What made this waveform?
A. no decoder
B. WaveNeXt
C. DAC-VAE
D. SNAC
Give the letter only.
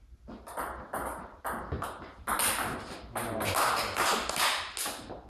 A